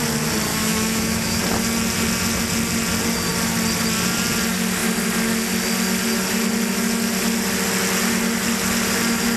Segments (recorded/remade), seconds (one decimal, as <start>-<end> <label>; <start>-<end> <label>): 0.0-0.5 recorded; 0.5-1.4 remade; 1.4-9.4 recorded